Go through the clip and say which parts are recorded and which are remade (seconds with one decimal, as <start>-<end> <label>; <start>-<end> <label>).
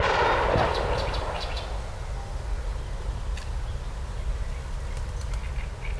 0.0-6.0 recorded